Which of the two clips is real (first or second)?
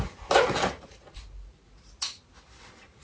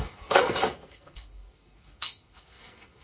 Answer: first